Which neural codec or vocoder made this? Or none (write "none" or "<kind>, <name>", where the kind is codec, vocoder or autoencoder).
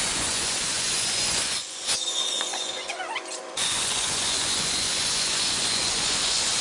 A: vocoder, Vocos